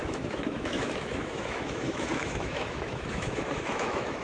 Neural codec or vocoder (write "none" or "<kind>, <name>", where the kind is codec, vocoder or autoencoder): autoencoder, DAC-VAE